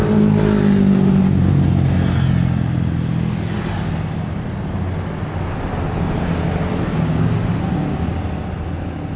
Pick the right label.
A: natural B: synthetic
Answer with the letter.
A